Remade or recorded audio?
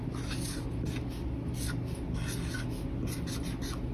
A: recorded